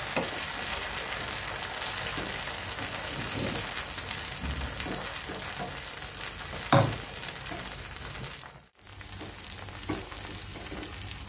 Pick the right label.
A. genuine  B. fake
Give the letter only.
A